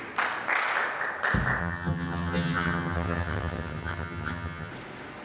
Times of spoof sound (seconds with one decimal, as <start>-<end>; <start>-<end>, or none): 1.6-4.7